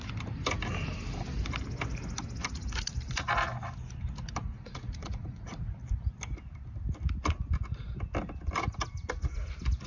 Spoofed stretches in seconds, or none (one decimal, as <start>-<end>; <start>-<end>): 4.4-5.6